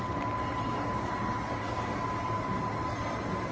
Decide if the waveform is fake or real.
real